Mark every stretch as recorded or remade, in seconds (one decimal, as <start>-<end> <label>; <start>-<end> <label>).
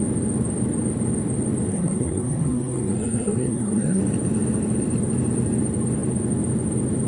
0.0-1.7 recorded; 1.7-4.0 remade; 4.0-7.1 recorded